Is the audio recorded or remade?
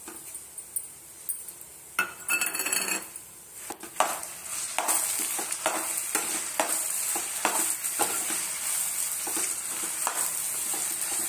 recorded